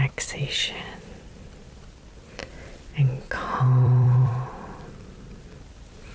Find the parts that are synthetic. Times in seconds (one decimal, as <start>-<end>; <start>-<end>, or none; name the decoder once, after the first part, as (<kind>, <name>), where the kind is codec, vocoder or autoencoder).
0.0-2.4 (vocoder, BigVGAN v2); 3.6-6.1